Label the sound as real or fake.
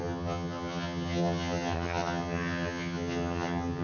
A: fake